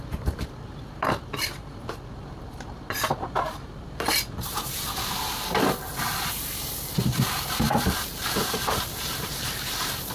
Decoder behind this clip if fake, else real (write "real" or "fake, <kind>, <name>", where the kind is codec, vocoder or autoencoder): fake, vocoder, BigVGAN v2